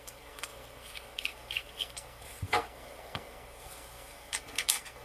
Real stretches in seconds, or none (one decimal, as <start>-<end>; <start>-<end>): none

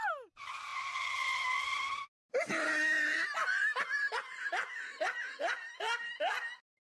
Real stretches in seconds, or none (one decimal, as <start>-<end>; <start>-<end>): 0.0-0.7; 2.7-4.7; 6.0-7.0

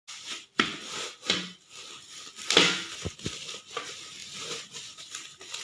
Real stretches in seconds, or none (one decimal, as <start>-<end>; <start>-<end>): 0.0-4.2; 5.0-5.6

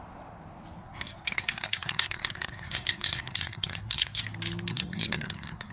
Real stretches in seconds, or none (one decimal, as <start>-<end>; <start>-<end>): 0.0-0.8; 4.2-4.7